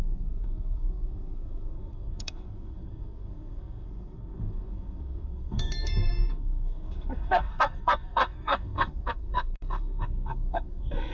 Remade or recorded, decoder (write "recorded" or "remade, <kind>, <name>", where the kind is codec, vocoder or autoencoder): remade, codec, SNAC